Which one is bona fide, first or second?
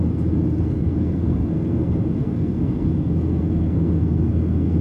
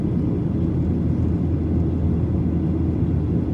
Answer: second